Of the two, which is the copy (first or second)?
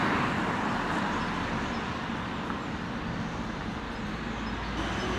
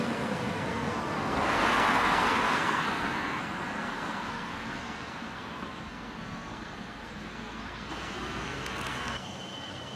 second